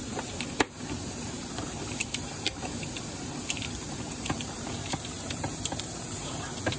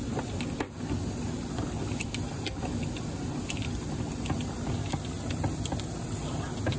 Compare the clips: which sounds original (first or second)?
second